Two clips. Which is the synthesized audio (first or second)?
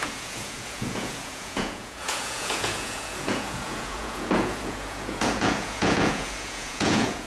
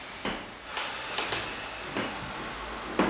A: first